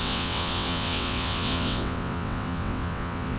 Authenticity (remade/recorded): remade